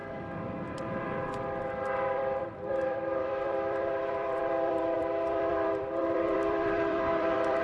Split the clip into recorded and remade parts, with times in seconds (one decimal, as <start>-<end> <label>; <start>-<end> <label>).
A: 0.0-0.7 recorded; 0.7-7.6 remade